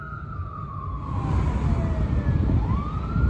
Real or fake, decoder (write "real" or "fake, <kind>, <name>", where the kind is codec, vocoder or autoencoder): real